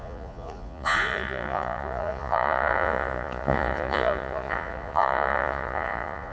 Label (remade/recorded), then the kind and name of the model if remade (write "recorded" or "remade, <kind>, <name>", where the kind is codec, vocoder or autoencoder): remade, vocoder, Vocos